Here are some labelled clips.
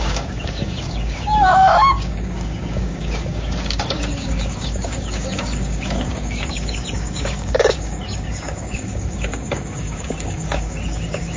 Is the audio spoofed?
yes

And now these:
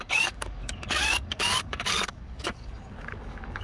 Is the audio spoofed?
yes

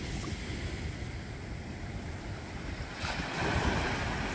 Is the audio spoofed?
no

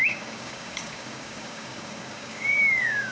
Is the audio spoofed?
yes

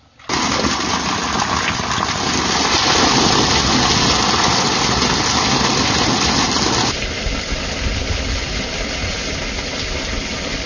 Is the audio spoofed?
no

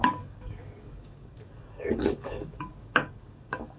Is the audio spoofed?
yes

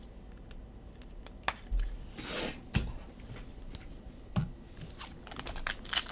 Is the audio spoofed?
no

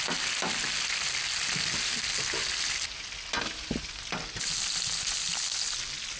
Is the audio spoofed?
no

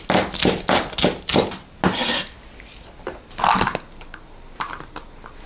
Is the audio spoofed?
no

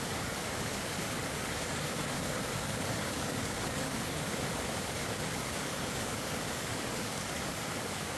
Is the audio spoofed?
yes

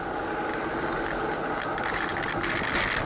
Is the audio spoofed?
no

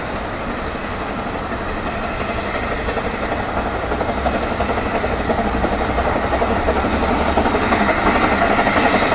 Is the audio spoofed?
no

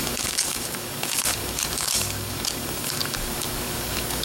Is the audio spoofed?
yes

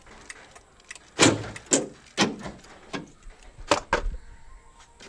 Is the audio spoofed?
no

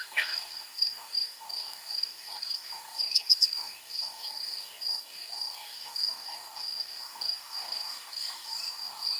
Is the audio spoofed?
yes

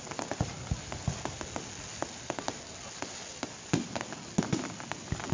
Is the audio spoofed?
no